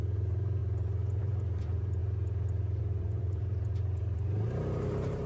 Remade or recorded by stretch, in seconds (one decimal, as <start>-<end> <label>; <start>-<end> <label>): 0.0-0.6 remade; 0.6-1.2 recorded; 1.2-2.0 remade; 2.0-2.8 recorded; 2.8-5.3 remade